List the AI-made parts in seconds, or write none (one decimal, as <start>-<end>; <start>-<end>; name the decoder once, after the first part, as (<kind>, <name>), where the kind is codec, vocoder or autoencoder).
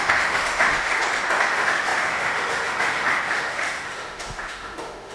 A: 0.0-0.9 (autoencoder, DAC-VAE); 1.5-5.1